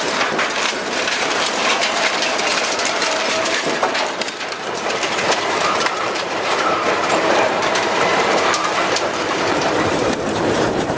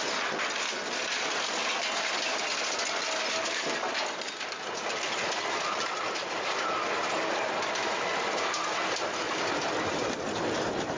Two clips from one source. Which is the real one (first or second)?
second